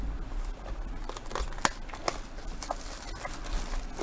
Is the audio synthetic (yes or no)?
no